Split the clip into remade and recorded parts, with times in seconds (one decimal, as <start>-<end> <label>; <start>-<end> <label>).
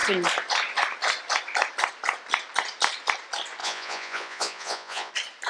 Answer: 0.0-3.6 recorded; 3.6-5.1 remade; 5.1-5.5 recorded